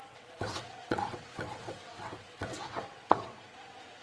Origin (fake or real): fake